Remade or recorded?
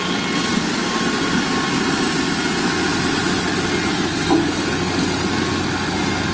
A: recorded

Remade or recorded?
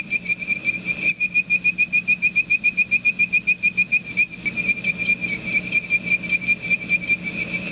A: recorded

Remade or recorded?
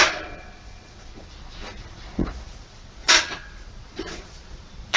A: remade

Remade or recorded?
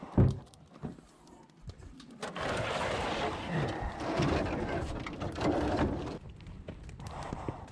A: remade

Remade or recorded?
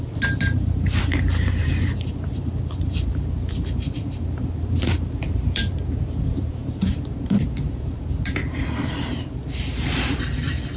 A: remade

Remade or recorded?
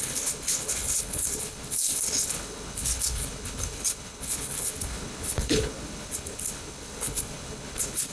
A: remade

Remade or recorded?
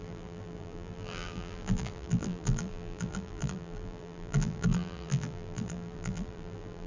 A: remade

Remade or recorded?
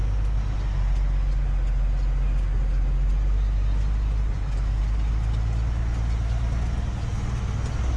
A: recorded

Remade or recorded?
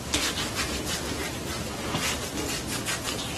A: recorded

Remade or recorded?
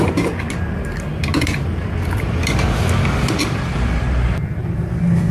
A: recorded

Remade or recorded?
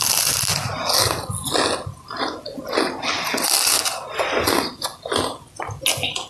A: recorded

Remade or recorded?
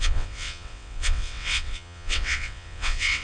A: remade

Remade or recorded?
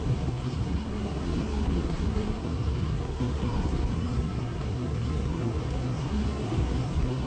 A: remade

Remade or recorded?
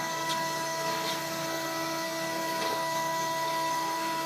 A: remade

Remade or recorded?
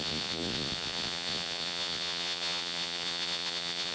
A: remade